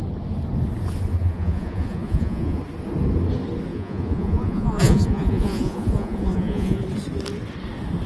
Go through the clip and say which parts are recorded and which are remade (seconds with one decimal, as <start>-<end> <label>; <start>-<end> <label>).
0.0-1.1 recorded; 1.1-2.6 remade; 2.6-3.7 recorded; 3.7-6.8 remade; 6.8-8.1 recorded